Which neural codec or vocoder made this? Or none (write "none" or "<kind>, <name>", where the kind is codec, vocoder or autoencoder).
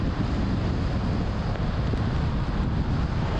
none